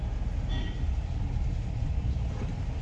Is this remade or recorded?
recorded